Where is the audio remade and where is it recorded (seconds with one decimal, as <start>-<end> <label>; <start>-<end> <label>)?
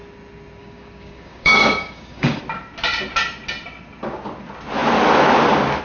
0.0-0.6 recorded; 0.6-2.4 remade; 2.4-5.8 recorded